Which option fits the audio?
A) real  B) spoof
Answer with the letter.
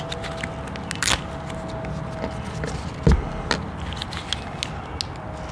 A